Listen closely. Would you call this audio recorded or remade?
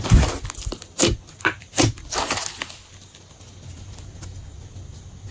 recorded